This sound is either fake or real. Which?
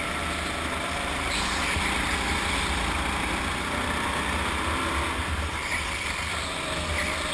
real